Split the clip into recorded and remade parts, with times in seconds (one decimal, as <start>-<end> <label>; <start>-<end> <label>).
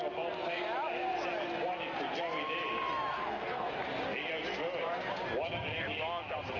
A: 0.0-3.1 recorded; 3.1-3.7 remade; 3.7-6.6 recorded